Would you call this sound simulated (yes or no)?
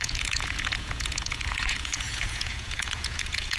yes